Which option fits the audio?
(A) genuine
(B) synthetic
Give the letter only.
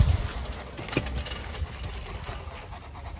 A